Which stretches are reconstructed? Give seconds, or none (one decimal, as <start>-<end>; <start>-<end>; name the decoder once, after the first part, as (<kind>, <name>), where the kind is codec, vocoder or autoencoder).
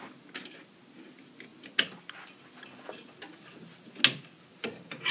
none